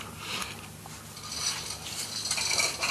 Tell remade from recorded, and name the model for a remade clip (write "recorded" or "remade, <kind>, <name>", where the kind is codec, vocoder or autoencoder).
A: recorded